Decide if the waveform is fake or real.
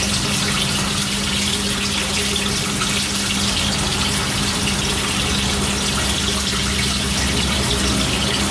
real